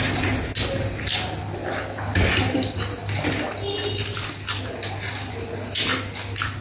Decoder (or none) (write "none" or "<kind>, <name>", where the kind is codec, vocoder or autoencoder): none